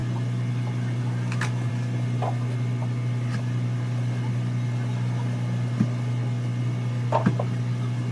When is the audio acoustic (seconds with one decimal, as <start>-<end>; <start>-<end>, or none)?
0.0-8.1